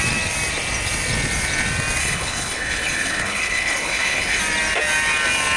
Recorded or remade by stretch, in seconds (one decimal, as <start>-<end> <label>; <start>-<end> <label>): 0.0-2.0 recorded; 2.0-4.4 remade; 4.4-5.6 recorded